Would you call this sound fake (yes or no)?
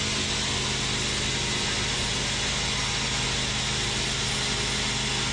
no